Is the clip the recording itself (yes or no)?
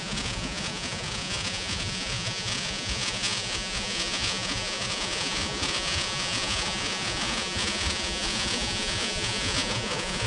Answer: no